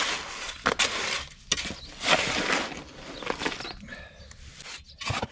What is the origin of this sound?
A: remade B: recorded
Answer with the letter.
B